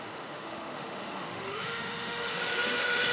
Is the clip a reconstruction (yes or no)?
yes